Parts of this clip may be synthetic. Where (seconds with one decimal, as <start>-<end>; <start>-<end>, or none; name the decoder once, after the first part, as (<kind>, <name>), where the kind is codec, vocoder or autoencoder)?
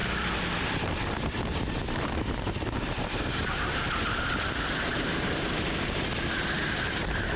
2.1-7.4 (vocoder, BigVGAN v2)